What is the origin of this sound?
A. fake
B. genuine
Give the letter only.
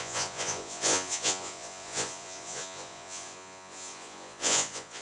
A